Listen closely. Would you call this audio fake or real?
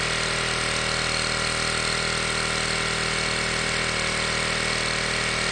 real